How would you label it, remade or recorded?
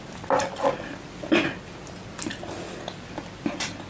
recorded